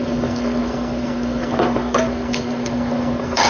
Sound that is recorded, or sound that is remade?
remade